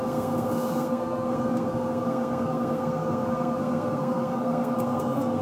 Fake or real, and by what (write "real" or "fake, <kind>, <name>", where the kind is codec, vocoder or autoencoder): fake, codec, SNAC